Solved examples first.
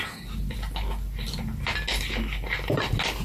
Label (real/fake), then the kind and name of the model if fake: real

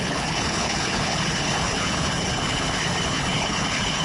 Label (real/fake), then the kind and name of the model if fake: fake, codec, HILCodec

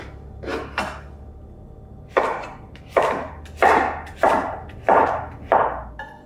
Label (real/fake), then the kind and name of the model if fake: real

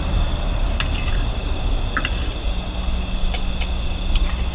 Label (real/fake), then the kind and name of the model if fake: real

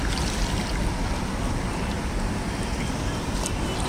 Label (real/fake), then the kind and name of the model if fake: real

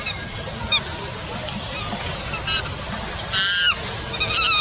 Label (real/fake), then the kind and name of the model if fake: real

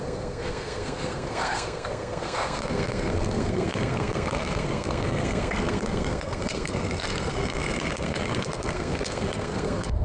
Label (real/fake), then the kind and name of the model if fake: fake, codec, SNAC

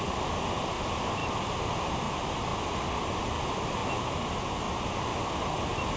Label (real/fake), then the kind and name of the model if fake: real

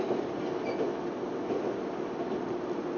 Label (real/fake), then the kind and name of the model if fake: real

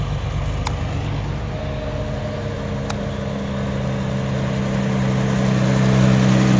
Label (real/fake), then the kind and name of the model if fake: real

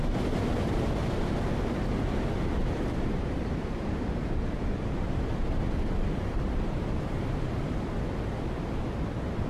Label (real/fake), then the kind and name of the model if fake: fake, vocoder, BigVGAN v2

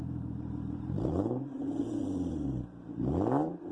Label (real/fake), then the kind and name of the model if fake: fake, vocoder, BigVGAN v2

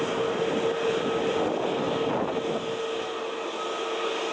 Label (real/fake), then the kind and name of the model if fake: real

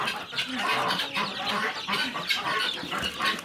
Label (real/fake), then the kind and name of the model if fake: real